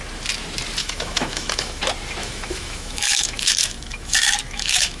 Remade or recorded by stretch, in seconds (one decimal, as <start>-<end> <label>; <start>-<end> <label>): 0.0-0.8 recorded; 0.8-1.8 remade; 1.8-2.2 recorded; 2.2-5.0 remade